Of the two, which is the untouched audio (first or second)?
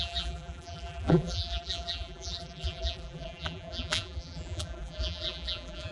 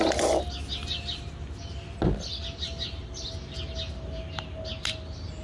second